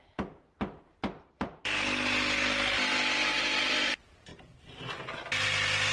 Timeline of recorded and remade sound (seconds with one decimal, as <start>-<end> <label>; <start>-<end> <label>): 0.0-5.9 recorded